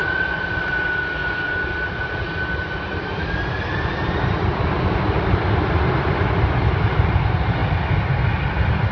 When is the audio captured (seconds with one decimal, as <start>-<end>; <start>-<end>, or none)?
0.0-1.2; 2.0-8.9